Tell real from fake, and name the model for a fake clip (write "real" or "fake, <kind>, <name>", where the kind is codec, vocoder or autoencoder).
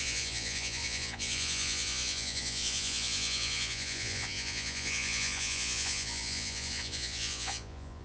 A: fake, vocoder, Vocos